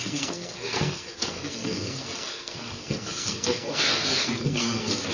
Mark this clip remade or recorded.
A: remade